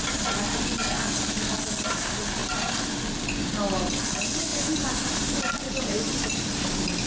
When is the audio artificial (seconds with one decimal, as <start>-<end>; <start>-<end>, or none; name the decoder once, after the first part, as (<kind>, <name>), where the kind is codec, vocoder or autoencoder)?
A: 2.4-2.9 (vocoder, BigVGAN v2); 4.5-6.5